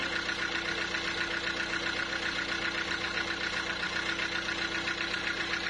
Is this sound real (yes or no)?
yes